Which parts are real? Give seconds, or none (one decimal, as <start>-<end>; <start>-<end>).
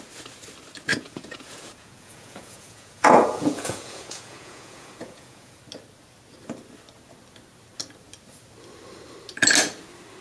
0.0-0.9; 5.6-10.2